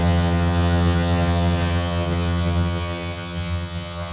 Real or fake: fake